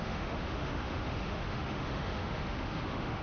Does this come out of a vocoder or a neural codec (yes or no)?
yes